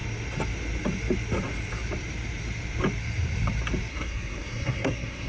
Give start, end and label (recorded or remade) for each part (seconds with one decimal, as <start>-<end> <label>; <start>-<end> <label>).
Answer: 0.0-3.9 recorded; 3.9-5.3 remade